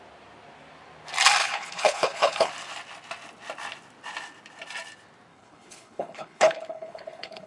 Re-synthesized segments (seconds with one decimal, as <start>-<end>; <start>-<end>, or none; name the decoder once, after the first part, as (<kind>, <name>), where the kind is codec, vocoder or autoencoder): 1.4-2.5 (codec, HILCodec); 5.3-7.5